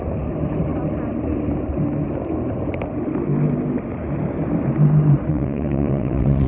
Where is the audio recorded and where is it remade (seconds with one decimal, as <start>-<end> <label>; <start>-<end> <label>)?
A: 0.0-5.3 recorded; 5.3-6.5 remade